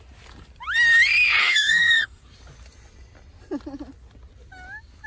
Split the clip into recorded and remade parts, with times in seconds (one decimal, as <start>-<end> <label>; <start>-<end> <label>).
0.0-1.4 recorded; 1.4-2.2 remade; 2.2-5.1 recorded